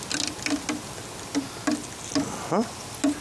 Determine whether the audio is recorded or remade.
recorded